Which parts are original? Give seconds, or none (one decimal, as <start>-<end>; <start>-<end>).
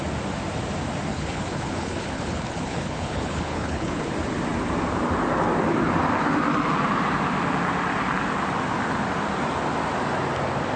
0.0-1.1; 4.1-10.8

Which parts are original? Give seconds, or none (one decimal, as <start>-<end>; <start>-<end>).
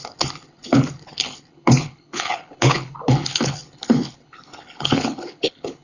none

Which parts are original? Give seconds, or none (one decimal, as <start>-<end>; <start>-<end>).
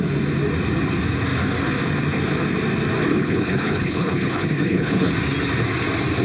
0.0-3.1; 5.1-6.2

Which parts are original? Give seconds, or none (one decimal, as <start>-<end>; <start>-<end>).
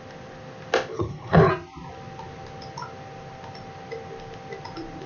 0.0-0.9; 1.5-5.1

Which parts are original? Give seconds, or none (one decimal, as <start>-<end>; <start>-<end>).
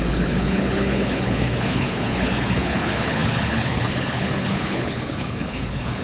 none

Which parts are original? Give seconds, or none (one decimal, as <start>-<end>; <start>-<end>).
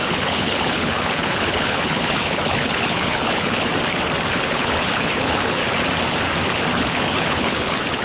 3.7-4.3; 5.6-6.8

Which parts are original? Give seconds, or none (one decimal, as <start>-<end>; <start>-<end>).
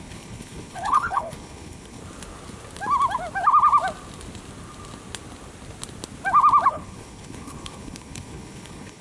2.0-6.7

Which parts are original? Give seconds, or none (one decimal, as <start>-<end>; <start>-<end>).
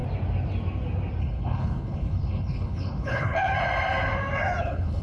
0.0-1.2; 3.5-4.6